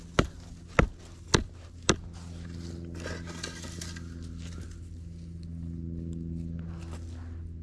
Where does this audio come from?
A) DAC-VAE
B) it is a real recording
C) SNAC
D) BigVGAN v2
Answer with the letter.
B